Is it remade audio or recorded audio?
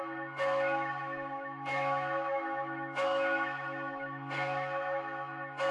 remade